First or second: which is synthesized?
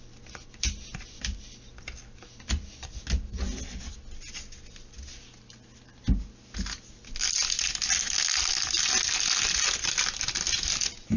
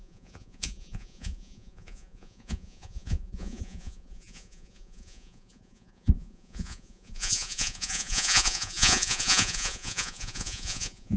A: second